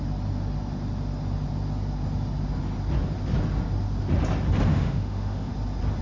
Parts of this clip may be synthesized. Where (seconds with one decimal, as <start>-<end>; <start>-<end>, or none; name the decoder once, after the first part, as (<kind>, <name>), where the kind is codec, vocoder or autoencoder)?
4.7-5.5 (autoencoder, DAC-VAE)